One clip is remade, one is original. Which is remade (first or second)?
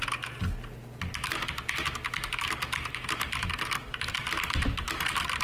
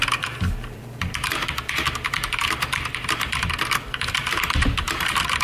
second